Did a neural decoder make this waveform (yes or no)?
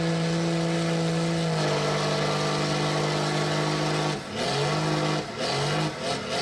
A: no